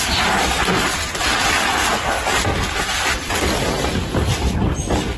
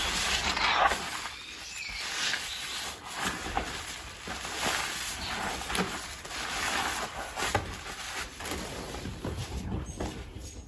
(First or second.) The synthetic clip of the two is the first